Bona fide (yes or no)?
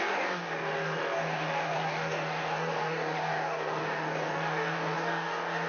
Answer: no